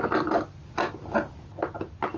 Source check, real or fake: real